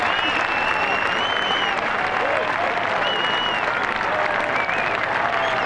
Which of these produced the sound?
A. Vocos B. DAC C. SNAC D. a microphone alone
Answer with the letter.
D